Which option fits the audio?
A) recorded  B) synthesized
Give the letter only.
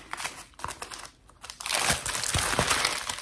A